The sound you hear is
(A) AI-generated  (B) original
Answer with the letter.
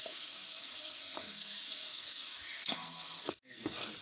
A